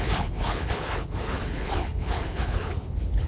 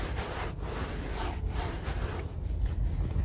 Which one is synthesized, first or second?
first